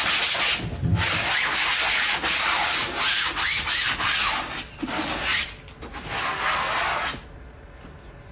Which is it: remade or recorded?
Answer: recorded